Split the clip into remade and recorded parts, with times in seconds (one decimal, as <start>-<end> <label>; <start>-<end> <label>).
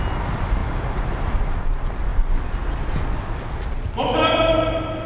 0.0-2.1 recorded; 2.1-2.9 remade; 2.9-5.1 recorded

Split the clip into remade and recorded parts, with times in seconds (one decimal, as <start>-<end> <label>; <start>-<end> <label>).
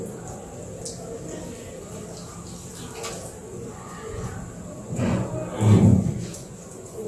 0.0-3.4 recorded; 3.4-4.3 remade; 4.3-4.8 recorded; 4.8-5.3 remade; 5.3-5.9 recorded; 5.9-7.1 remade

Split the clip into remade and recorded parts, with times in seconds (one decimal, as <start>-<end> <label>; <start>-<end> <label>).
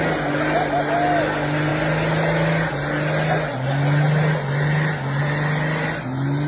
0.0-6.5 recorded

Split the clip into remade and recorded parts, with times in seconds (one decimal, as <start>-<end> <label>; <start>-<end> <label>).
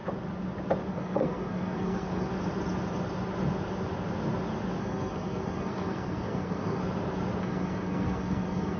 0.0-0.9 recorded; 0.9-2.3 remade; 2.3-4.8 recorded; 4.8-6.8 remade; 6.8-7.4 recorded; 7.4-8.8 remade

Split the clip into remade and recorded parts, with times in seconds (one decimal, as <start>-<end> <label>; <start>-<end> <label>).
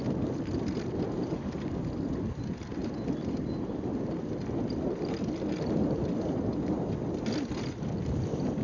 0.0-2.8 recorded; 2.8-6.9 remade; 6.9-8.6 recorded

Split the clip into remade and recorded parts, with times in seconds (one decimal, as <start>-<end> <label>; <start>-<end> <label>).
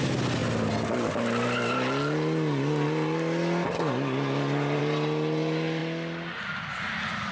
0.0-7.3 recorded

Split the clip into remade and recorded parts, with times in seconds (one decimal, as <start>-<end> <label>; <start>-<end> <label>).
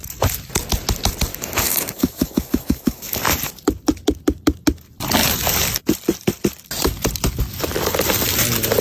0.0-1.3 recorded; 1.3-3.2 remade; 3.2-8.8 recorded